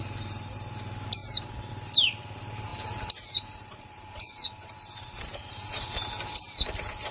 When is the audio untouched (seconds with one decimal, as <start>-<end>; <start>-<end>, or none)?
0.0-1.2; 1.7-2.7; 6.1-7.1